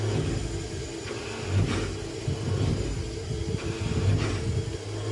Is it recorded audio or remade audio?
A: recorded